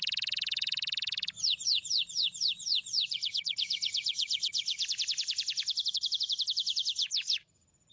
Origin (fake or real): fake